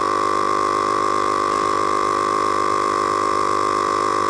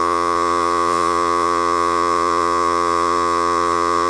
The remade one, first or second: second